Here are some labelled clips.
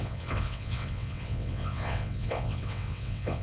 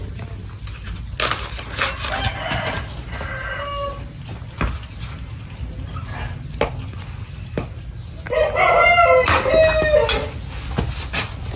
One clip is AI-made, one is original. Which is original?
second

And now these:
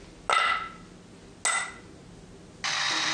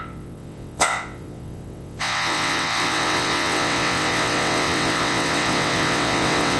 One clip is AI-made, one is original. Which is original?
first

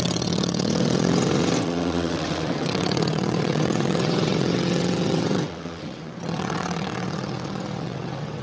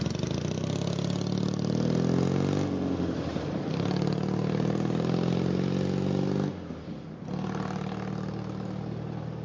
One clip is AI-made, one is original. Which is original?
second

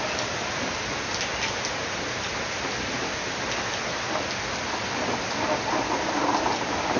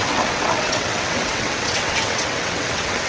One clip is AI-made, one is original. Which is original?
first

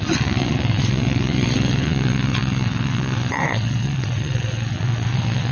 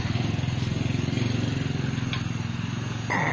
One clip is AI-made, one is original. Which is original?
second